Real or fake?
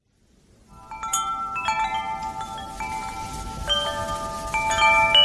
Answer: real